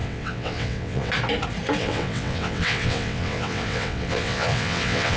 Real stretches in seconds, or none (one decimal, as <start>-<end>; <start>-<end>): 1.1-1.8